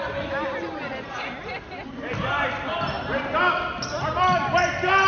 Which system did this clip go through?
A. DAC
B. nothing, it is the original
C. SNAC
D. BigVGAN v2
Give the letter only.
B